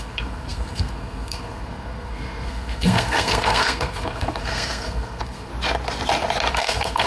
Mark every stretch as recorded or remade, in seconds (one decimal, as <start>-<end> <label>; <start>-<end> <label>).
0.0-5.5 remade; 5.5-6.5 recorded; 6.5-7.1 remade